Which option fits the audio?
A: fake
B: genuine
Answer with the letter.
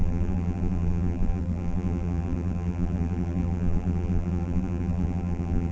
A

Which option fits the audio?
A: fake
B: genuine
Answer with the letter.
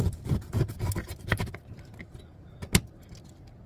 B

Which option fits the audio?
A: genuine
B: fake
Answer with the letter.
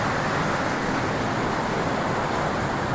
A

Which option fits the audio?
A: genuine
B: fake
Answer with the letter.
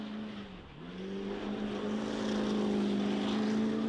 A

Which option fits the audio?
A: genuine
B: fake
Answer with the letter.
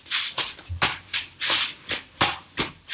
B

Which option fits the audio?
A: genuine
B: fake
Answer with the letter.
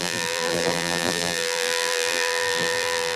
B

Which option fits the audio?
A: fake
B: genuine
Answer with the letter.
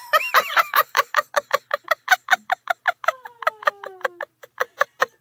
A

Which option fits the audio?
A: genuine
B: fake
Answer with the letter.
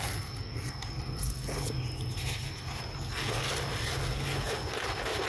A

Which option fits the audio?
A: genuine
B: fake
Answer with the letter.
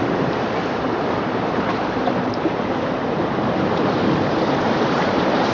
B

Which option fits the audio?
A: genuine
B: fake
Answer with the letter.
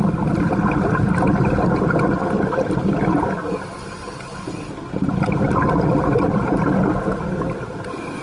A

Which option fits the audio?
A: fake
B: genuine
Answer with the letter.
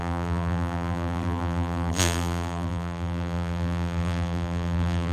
A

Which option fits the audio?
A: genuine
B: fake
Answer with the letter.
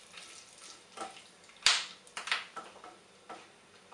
A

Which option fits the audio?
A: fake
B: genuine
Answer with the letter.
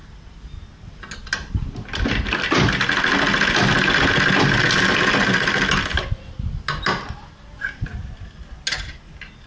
B